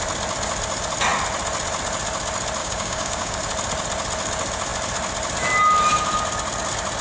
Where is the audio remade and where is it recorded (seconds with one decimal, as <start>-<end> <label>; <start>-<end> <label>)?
0.0-2.6 recorded; 2.6-3.4 remade; 3.4-7.0 recorded